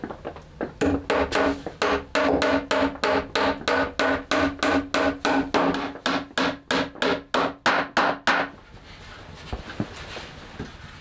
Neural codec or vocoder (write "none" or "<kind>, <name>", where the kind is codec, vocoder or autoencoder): none